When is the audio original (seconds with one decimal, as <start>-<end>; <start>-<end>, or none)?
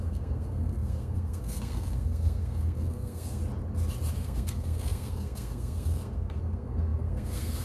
3.4-4.1